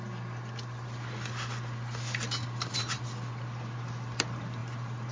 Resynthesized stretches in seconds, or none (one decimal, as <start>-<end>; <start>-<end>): none